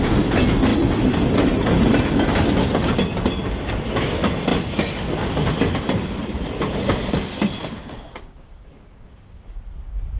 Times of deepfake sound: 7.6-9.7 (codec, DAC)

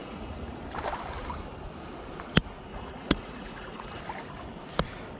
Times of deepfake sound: 0.0-0.6 (vocoder, Vocos); 2.7-4.0

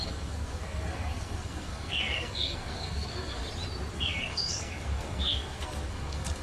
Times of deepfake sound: 0.0-3.4 (codec, SNAC); 3.9-6.4

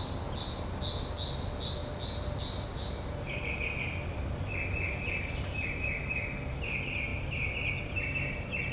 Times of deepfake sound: none

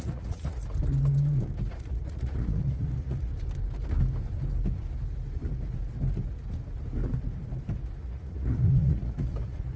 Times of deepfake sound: 0.0-0.6 (vocoder, Vocos); 1.7-3.3; 8.0-9.8

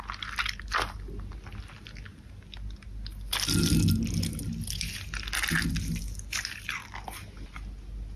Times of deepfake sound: none